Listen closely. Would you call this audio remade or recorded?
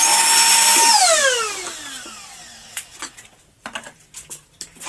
recorded